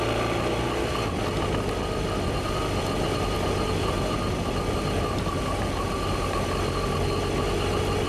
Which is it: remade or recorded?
recorded